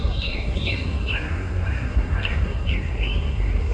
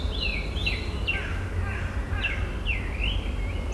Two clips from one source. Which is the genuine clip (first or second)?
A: second